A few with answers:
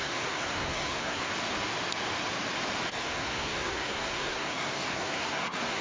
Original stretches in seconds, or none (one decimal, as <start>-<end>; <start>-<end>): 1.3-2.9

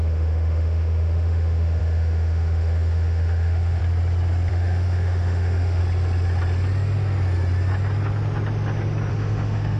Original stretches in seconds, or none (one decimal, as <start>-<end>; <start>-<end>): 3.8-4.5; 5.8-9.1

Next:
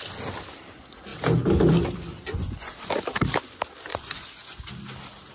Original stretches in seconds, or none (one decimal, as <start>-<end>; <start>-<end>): 0.0-2.1; 2.7-3.9; 4.7-5.3

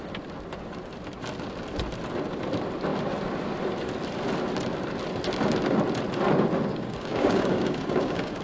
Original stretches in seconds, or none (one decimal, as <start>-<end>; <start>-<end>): 0.0-6.7

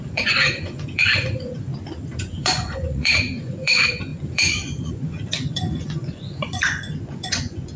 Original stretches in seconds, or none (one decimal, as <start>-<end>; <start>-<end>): 1.7-2.2